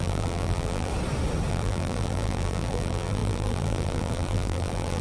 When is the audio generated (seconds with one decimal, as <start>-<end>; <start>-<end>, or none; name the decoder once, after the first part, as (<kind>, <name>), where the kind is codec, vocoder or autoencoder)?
0.0-0.9 (vocoder, BigVGAN v2); 1.5-5.0